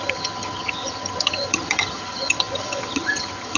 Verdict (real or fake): fake